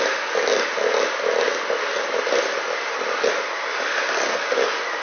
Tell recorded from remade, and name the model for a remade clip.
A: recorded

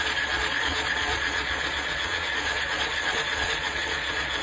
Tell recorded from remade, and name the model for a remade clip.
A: remade, vocoder, Vocos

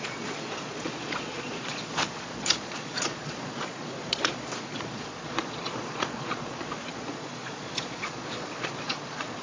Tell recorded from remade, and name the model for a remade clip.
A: remade, vocoder, Vocos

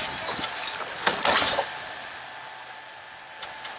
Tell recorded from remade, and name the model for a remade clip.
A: recorded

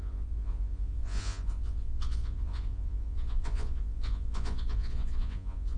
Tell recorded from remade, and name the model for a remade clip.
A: remade, vocoder, Vocos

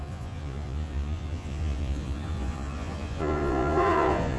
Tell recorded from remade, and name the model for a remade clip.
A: remade, vocoder, Vocos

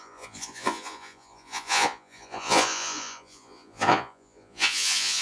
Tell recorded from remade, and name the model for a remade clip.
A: remade, vocoder, Vocos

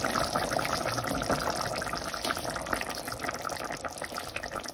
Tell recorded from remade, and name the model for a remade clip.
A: recorded